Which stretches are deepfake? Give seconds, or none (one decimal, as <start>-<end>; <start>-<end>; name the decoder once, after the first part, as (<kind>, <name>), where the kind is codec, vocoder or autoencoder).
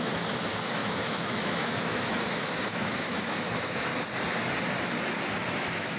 0.0-3.9 (autoencoder, DAC-VAE); 5.5-6.0